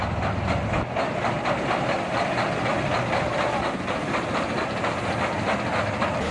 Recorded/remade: recorded